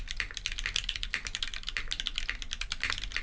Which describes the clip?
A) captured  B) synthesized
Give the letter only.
A